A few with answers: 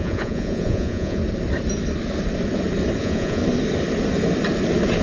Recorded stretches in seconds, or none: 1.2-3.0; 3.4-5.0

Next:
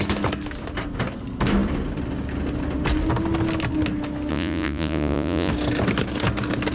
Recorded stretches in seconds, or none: 0.0-4.3; 5.5-6.7

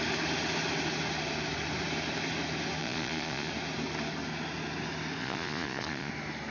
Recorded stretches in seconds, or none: 0.0-2.8; 3.5-5.2; 6.1-6.5

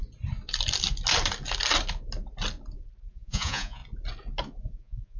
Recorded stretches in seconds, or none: 0.0-3.1; 3.8-4.7

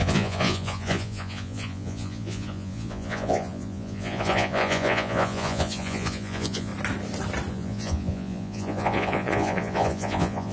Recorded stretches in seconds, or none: 6.7-7.5

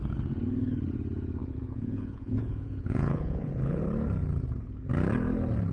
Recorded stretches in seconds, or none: 0.0-1.4; 3.8-5.7

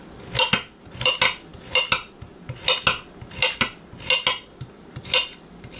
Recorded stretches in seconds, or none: 0.0-5.8

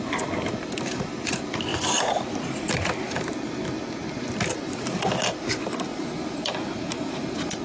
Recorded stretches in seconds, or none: 0.0-7.6